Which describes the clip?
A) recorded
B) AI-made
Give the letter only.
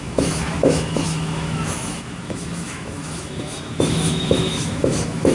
B